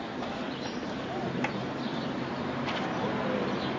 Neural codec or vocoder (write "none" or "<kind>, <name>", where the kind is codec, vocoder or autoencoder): none